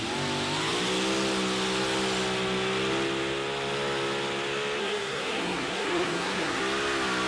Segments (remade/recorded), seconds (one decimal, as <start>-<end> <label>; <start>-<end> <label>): 0.0-4.8 recorded; 4.8-6.6 remade; 6.6-7.3 recorded